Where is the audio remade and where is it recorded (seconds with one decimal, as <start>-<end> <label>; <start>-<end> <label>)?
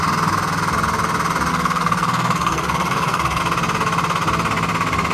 0.0-1.5 recorded; 1.5-3.4 remade; 3.4-5.1 recorded